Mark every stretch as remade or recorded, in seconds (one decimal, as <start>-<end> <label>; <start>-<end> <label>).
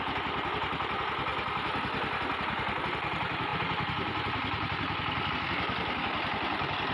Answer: 0.0-6.9 recorded